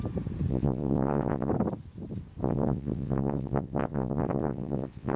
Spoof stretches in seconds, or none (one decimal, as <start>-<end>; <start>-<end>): 0.5-1.5; 2.4-5.2